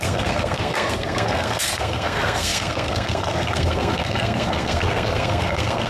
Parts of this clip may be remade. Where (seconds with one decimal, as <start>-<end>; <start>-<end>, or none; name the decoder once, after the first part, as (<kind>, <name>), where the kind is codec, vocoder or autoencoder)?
0.0-5.9 (codec, SNAC)